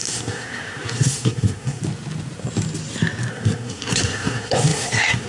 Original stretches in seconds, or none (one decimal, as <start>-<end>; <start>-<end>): 1.8-3.3